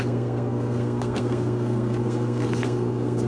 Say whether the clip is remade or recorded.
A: remade